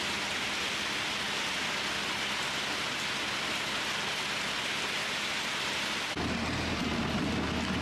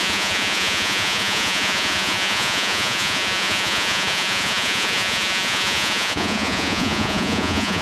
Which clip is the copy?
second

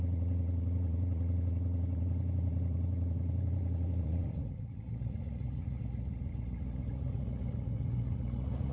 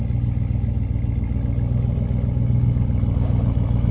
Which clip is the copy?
first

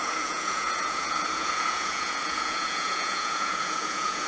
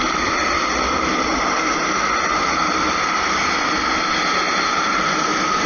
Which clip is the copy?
first